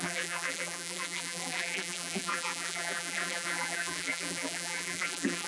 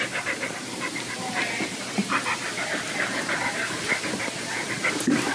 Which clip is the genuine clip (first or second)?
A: second